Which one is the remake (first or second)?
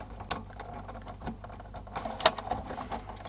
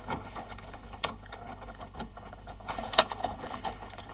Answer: second